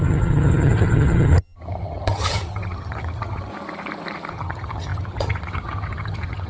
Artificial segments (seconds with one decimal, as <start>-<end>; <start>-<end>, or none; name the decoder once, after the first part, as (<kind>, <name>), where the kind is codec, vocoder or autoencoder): 0.0-3.5 (vocoder, HiFi-GAN); 4.3-6.5